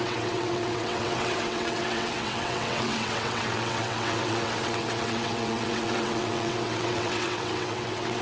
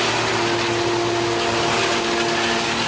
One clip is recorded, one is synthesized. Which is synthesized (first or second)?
first